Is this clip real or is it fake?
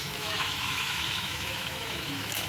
fake